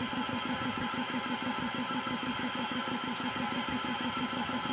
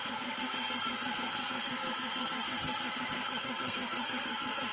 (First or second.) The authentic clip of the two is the first